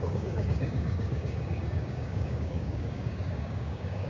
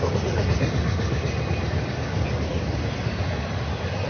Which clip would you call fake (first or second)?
first